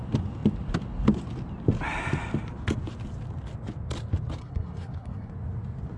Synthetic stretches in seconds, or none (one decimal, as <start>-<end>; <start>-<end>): 4.4-5.3